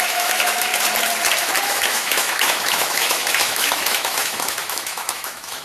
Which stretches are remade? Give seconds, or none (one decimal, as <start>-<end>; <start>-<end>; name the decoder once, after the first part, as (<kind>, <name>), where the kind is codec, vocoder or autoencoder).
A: 0.0-0.7 (autoencoder, DAC-VAE); 1.6-5.6